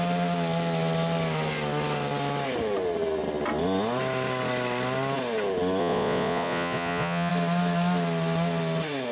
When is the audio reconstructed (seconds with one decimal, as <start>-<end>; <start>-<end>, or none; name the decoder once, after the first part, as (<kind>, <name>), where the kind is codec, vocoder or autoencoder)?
5.8-7.3 (vocoder, Vocos)